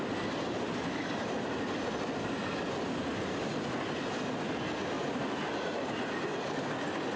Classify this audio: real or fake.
real